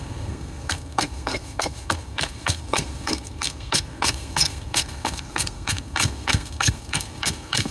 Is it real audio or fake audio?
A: fake